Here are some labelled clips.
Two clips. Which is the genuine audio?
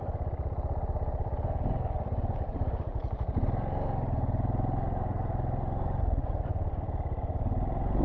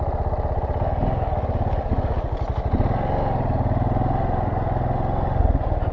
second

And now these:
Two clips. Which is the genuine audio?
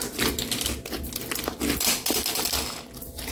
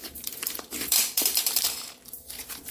first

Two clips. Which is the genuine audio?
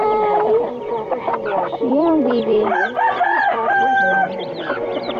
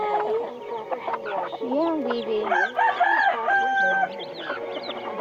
second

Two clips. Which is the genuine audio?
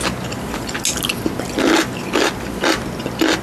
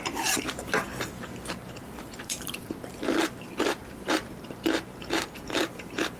first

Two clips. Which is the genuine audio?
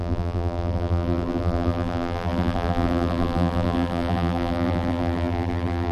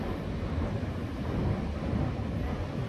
second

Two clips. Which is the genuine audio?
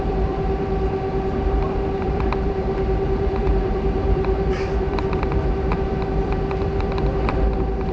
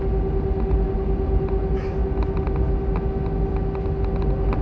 second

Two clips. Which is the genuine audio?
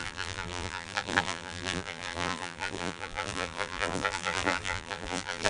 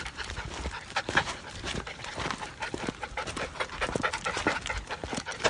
second